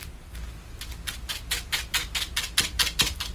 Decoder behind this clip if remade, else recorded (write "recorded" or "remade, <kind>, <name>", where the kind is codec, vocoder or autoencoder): recorded